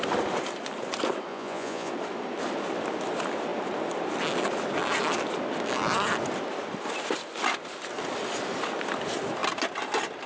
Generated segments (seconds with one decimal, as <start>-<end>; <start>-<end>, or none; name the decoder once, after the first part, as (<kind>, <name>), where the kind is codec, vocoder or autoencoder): 1.3-1.9 (vocoder, Vocos)